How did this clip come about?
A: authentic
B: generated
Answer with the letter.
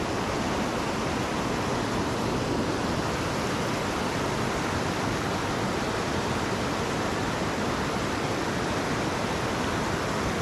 A